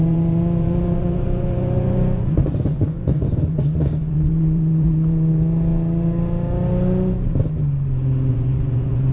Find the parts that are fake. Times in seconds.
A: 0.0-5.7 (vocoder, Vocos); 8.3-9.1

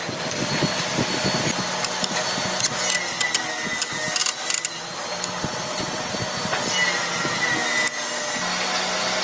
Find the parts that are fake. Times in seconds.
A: none

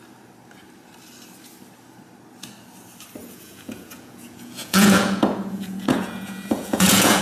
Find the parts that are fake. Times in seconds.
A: 3.2-7.2 (vocoder, Vocos)

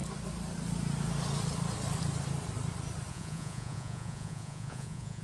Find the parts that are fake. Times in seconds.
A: 3.1-5.2 (vocoder, Vocos)

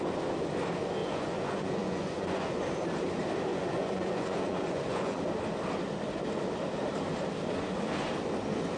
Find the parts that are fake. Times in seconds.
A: 1.0-2.6 (vocoder, Vocos); 3.5-5.2

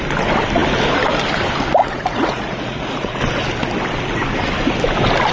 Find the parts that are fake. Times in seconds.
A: 1.8-3.2 (vocoder, Vocos)

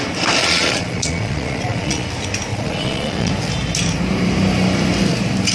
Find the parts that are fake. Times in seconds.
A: 0.4-2.1 (vocoder, Vocos); 2.5-3.3

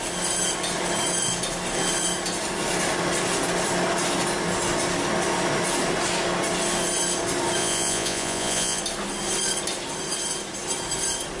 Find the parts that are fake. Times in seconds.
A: 7.6-8.8 (vocoder, Vocos)